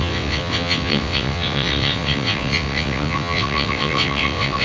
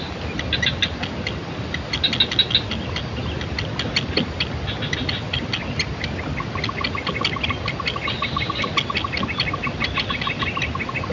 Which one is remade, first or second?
first